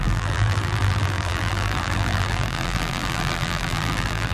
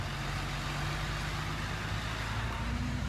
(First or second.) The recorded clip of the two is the second